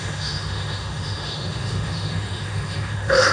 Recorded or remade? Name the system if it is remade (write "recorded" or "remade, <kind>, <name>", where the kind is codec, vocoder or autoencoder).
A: remade, autoencoder, DAC-VAE